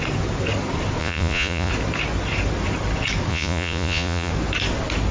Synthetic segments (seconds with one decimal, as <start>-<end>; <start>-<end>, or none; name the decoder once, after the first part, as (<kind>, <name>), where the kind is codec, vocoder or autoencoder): 1.0-1.7 (vocoder, Vocos); 3.3-4.3